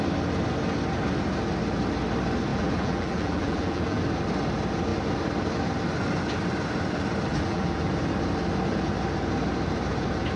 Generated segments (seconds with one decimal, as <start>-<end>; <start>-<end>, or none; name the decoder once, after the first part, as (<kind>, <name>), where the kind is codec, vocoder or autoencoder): 2.5-4.0 (vocoder, BigVGAN v2); 7.3-7.9